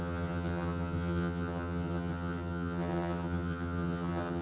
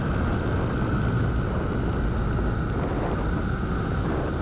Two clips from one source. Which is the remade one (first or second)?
first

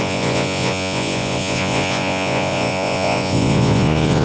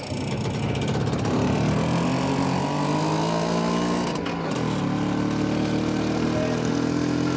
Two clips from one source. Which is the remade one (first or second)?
first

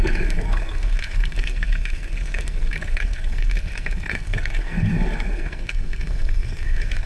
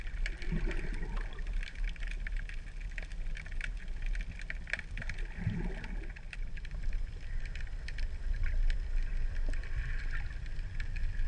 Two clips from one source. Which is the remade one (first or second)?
first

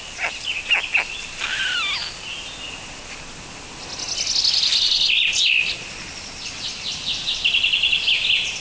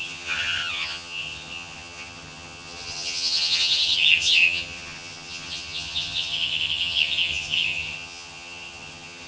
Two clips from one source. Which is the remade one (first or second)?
second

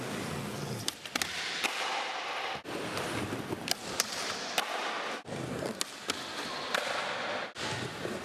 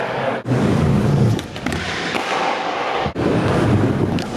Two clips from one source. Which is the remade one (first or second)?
second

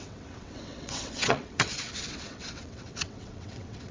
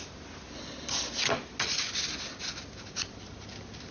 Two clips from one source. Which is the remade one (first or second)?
first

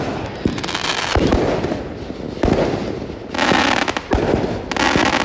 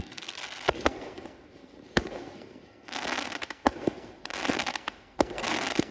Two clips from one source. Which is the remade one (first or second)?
second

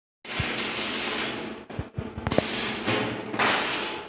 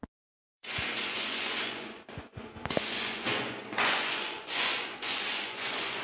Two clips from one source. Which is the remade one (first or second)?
second